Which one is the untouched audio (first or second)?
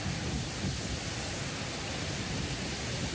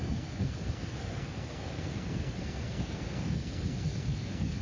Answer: first